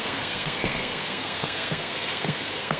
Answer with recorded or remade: remade